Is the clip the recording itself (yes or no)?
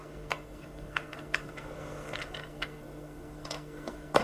no